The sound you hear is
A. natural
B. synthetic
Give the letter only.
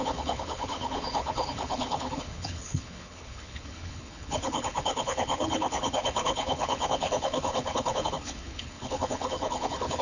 B